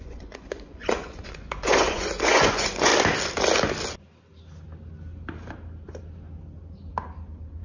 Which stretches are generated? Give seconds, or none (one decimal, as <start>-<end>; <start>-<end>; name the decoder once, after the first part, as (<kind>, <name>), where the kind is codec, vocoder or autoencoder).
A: 0.0-2.9 (vocoder, Vocos)